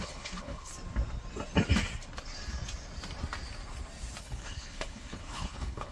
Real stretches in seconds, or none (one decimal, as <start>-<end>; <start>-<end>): 0.7-4.2